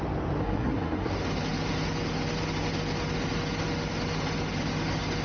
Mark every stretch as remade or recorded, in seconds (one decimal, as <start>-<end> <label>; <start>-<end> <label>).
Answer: 0.0-0.4 recorded; 0.4-1.1 remade; 1.1-5.2 recorded